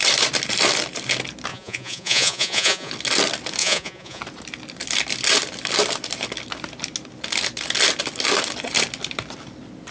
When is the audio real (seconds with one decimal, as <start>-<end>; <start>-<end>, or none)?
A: 0.0-1.5; 2.9-3.6; 4.2-9.9